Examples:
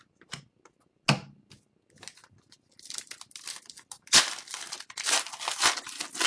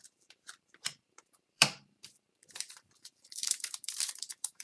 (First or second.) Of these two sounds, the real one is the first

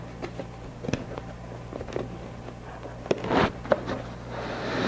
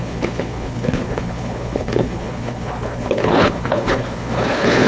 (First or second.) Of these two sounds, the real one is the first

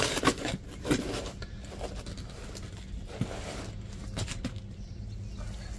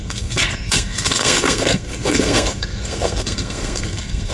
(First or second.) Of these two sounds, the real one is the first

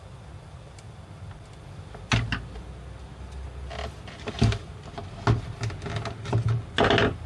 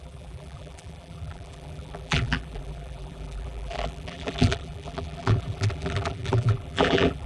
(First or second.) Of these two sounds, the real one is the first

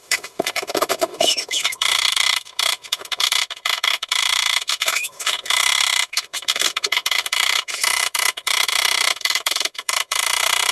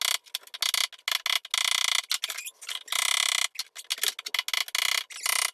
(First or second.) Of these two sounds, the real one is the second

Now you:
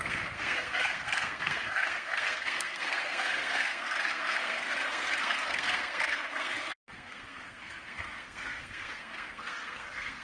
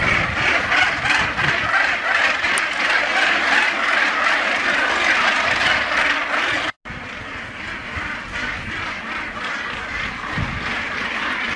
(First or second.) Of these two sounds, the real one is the second